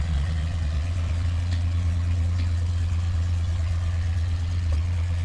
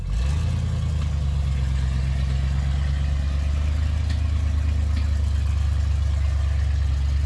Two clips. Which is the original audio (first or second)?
second